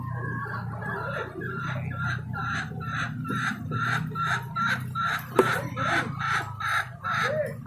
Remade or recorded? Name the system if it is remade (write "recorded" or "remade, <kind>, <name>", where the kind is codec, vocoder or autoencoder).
recorded